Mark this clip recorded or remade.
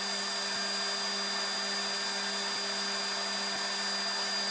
recorded